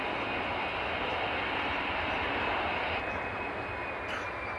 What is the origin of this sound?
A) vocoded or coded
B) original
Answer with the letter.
B